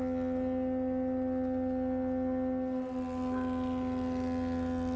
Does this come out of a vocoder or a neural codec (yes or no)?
no